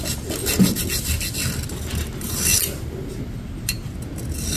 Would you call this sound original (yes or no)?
yes